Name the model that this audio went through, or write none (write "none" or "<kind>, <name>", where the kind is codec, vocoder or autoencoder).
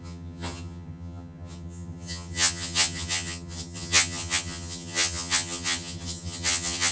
vocoder, HiFi-GAN